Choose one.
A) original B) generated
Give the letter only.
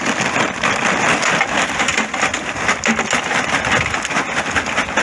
A